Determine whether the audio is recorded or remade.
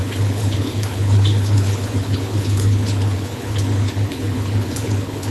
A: remade